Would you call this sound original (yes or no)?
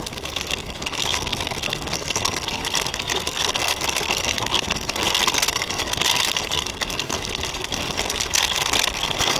no